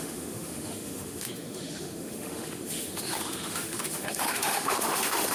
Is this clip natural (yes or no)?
no